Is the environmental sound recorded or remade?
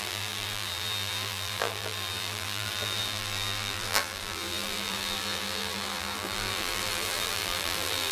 remade